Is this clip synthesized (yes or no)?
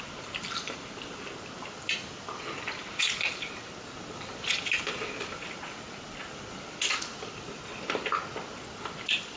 no